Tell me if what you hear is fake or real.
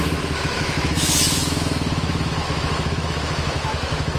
fake